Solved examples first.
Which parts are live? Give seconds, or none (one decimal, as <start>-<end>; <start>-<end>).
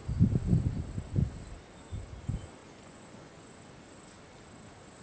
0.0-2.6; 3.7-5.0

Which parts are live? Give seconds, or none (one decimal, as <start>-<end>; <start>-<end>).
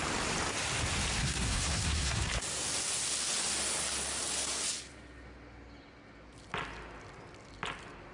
0.0-1.2; 2.3-8.1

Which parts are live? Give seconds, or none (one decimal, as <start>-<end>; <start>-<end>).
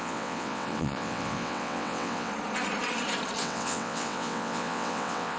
2.3-3.4